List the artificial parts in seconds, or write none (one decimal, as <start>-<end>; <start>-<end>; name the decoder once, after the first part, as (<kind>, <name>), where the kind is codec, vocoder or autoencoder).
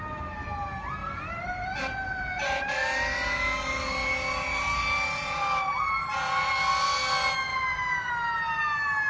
1.0-2.8 (vocoder, BigVGAN v2); 7.5-8.1